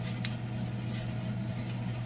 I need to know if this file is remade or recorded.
recorded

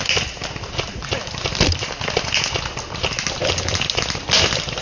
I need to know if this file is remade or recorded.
recorded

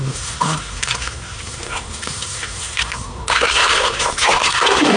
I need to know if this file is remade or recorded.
remade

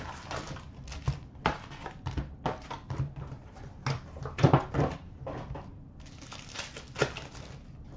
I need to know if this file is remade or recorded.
recorded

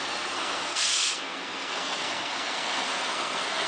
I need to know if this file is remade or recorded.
remade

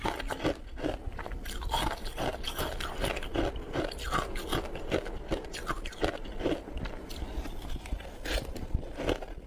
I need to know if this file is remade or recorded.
recorded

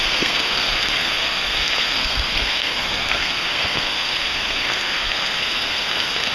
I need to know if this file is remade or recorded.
remade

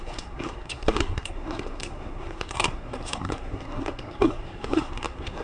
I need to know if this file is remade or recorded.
remade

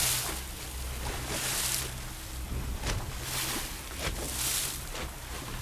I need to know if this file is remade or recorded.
recorded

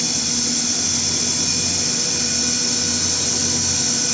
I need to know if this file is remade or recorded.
recorded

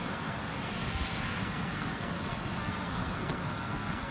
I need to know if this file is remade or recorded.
remade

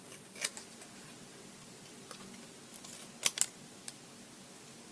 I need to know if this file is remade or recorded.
recorded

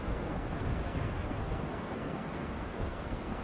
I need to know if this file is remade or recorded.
remade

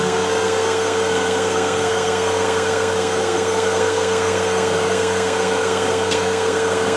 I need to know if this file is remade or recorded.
remade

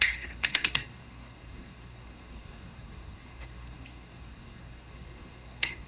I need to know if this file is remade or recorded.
remade